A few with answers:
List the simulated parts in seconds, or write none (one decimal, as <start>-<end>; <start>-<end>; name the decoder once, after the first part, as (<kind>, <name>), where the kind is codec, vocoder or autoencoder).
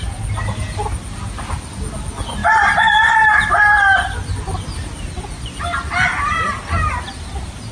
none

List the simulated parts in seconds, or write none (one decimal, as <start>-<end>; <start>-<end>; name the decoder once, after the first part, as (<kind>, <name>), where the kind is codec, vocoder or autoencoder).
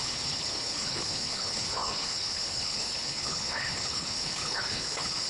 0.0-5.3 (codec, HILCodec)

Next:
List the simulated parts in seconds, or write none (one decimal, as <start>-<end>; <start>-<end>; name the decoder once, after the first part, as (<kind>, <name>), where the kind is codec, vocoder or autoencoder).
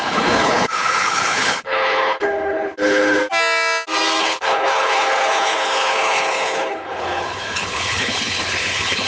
0.0-3.2 (codec, HILCodec); 4.2-9.1